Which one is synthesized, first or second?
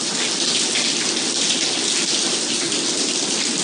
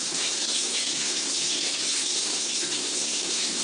second